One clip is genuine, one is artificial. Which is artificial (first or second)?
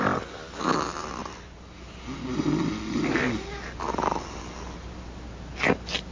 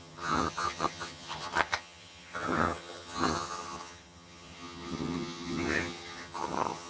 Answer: second